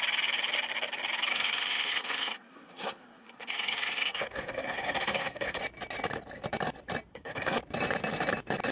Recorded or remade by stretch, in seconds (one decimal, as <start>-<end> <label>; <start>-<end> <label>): 0.0-1.3 recorded; 1.3-5.6 remade; 5.6-7.1 recorded; 7.1-7.6 remade; 7.6-8.7 recorded